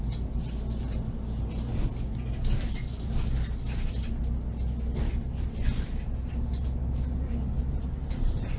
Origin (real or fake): real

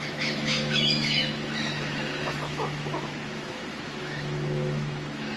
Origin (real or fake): fake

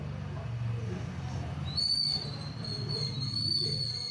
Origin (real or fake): real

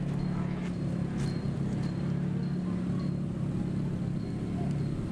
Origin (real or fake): real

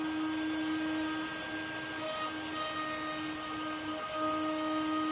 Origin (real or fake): real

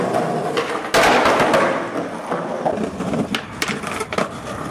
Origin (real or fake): real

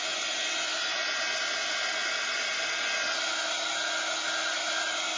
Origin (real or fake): real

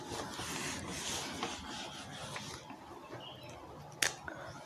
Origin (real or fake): real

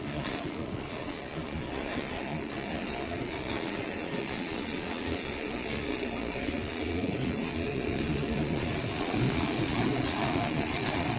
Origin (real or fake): fake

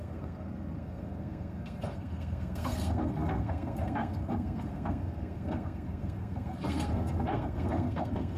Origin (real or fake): fake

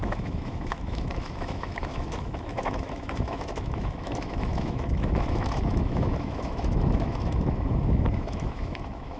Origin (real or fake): fake